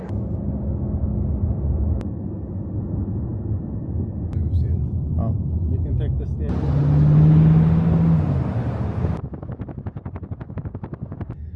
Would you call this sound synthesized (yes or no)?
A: no